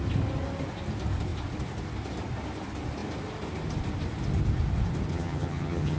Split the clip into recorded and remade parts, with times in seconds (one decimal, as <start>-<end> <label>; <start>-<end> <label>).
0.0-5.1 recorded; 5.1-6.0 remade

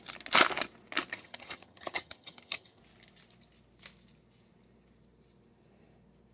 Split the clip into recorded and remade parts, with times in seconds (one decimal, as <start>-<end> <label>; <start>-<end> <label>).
0.0-1.1 recorded; 1.1-2.8 remade; 2.8-6.3 recorded

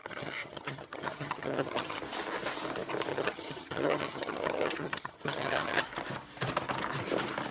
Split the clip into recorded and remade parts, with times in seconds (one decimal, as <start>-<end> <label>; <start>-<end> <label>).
0.0-2.0 remade; 2.0-3.1 recorded; 3.1-5.9 remade; 5.9-7.5 recorded

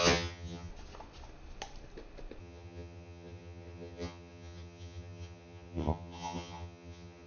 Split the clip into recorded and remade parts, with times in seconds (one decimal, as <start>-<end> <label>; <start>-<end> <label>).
0.0-0.7 remade; 0.7-2.4 recorded; 2.4-7.3 remade

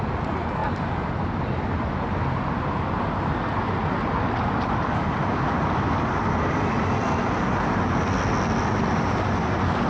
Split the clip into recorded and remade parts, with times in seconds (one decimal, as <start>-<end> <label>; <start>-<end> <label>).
0.0-9.9 recorded

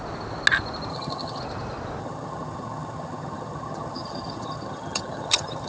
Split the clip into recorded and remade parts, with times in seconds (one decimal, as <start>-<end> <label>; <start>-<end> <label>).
0.0-0.9 recorded; 0.9-1.4 remade; 1.4-2.0 recorded; 2.0-5.7 remade

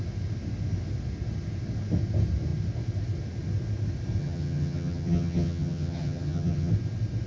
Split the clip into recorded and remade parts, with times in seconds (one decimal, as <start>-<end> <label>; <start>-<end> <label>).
0.0-4.2 recorded; 4.2-6.7 remade; 6.7-7.3 recorded

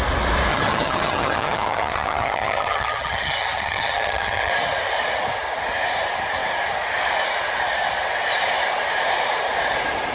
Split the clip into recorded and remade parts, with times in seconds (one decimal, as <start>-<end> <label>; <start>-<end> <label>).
0.0-0.5 recorded; 0.5-4.5 remade; 4.5-10.1 recorded